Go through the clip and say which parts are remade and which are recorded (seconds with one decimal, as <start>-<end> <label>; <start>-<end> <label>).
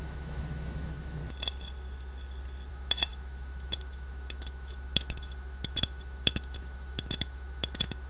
0.0-1.2 remade; 1.2-2.7 recorded; 2.7-8.1 remade